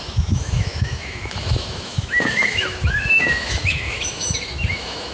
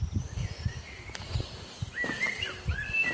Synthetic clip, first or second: first